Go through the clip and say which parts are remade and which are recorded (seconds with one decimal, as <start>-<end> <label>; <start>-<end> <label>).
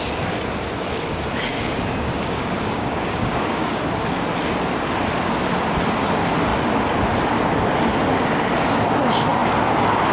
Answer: 0.0-1.5 recorded; 1.5-3.8 remade; 3.8-10.1 recorded